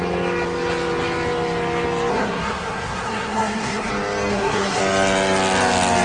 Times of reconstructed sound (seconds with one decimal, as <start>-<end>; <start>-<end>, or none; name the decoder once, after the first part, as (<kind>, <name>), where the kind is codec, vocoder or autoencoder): 2.1-3.9 (codec, SNAC); 4.3-4.8